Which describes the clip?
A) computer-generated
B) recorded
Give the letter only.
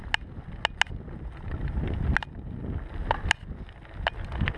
B